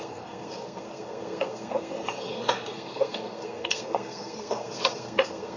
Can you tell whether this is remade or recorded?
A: remade